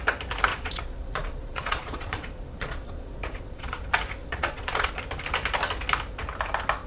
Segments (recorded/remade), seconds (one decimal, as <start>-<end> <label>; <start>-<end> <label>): 0.0-0.5 recorded; 0.5-3.8 remade; 3.8-4.2 recorded; 4.2-4.9 remade; 4.9-6.9 recorded